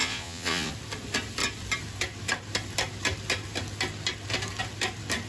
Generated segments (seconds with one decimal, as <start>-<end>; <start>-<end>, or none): 0.0-0.7